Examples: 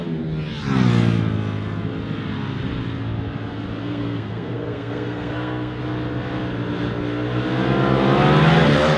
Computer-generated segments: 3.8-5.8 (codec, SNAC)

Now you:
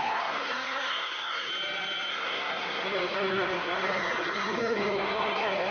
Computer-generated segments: 0.0-1.5 (codec, SNAC); 2.1-5.7

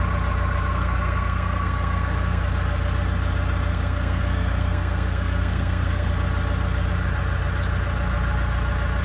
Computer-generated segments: 0.7-2.4 (codec, SNAC); 3.7-6.1

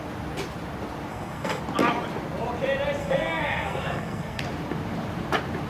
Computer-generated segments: 1.1-1.6 (codec, SNAC); 3.0-4.4

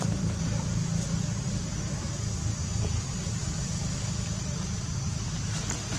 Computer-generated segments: none

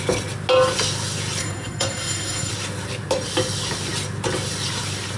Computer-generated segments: 1.4-2.5 (codec, SNAC)

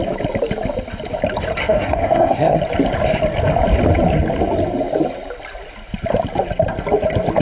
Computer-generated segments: 1.6-2.6 (codec, SNAC)

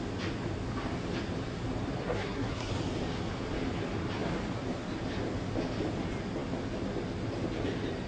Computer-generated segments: 2.0-2.7 (codec, SNAC)